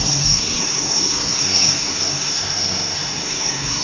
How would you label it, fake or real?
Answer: fake